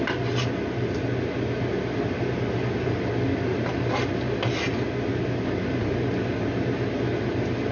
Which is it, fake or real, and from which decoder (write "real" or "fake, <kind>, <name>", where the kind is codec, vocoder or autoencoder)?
real